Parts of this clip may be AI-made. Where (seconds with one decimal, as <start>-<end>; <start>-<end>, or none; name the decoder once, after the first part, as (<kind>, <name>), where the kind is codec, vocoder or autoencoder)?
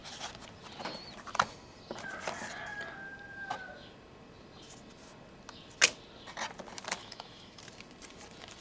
7.0-7.6 (autoencoder, DAC-VAE)